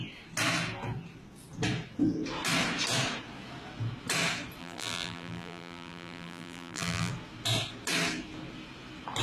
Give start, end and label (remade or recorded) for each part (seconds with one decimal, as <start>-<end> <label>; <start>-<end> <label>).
0.0-4.6 recorded; 4.6-7.1 remade; 7.1-9.2 recorded